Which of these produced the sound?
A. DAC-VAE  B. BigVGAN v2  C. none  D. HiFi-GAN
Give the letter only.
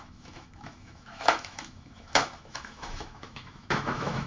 A